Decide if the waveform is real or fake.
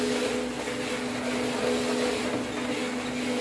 real